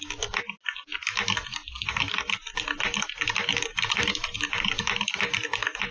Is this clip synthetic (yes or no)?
no